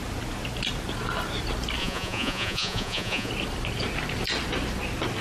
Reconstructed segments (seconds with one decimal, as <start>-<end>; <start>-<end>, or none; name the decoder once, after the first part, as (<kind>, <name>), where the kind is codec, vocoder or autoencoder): 1.8-3.3 (vocoder, Vocos)